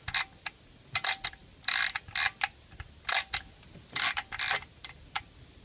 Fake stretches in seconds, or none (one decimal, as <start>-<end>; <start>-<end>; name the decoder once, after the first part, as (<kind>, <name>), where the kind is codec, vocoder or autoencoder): none